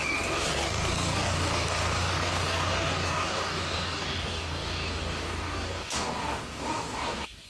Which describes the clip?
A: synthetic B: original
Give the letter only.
A